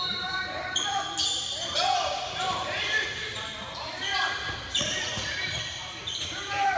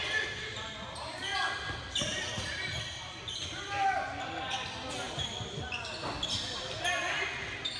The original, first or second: second